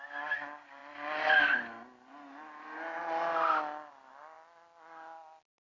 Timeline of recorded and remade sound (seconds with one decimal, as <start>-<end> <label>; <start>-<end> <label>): 0.0-5.6 recorded